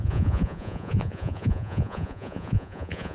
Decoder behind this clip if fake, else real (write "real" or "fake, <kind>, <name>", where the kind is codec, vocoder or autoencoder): fake, vocoder, Vocos